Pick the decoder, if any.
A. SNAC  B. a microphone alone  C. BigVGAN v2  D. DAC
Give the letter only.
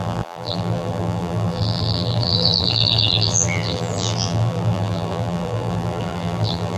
C